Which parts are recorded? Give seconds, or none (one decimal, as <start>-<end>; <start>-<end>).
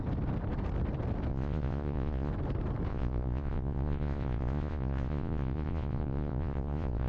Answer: 0.0-1.3; 2.3-2.9